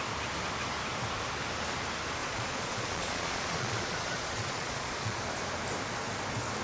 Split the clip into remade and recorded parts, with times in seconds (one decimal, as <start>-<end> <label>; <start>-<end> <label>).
0.0-2.2 recorded; 2.2-5.2 remade; 5.2-6.6 recorded